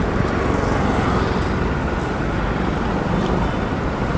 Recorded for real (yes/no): yes